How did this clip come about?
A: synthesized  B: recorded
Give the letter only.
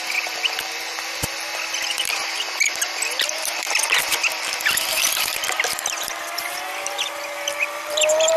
A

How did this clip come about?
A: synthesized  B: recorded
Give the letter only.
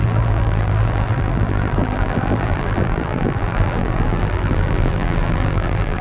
A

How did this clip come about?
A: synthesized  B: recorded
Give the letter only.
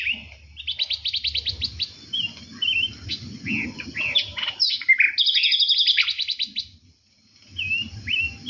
B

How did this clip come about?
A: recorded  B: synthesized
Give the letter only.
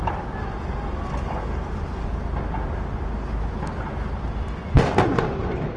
A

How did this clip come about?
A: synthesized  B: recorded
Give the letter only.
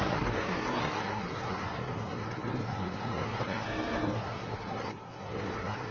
A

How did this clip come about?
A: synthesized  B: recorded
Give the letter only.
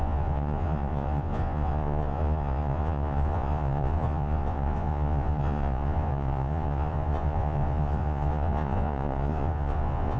A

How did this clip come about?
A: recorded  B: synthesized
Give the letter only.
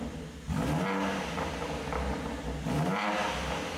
A